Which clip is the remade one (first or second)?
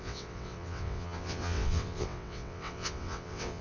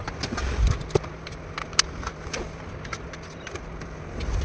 first